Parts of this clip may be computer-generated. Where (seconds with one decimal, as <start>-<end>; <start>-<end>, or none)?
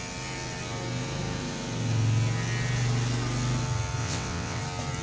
4.0-4.6